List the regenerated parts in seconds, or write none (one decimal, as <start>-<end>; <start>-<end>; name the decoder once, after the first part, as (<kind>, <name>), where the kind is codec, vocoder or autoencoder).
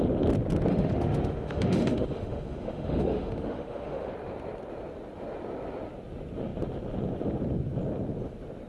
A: 0.7-4.1 (autoencoder, DAC-VAE)